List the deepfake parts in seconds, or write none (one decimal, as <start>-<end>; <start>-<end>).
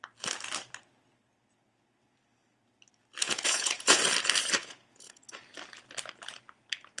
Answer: 3.2-4.0; 4.6-5.3